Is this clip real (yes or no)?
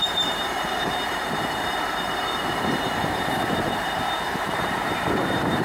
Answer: no